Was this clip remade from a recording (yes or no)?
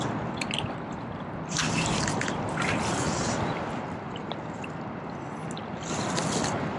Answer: no